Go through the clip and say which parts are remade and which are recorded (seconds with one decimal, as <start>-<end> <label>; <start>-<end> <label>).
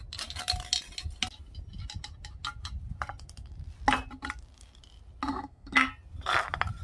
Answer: 0.0-5.3 recorded; 5.3-5.9 remade; 5.9-6.8 recorded